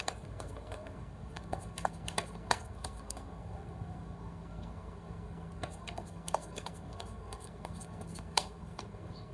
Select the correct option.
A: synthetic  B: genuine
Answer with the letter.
A